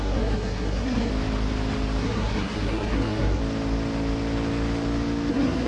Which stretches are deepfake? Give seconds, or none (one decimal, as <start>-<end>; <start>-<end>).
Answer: 0.0-1.1; 2.0-3.4; 5.3-5.7